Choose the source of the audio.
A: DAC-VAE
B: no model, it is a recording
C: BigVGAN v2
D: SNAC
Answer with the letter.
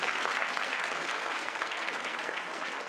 D